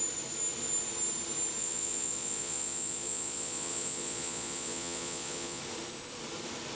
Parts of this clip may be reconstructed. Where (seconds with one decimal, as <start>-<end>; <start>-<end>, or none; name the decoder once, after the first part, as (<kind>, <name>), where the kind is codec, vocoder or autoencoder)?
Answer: 1.6-5.6 (vocoder, Vocos)